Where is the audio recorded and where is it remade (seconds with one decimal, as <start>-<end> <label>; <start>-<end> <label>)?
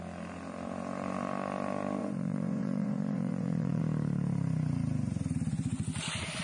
0.0-2.0 recorded; 2.0-3.8 remade; 3.8-6.4 recorded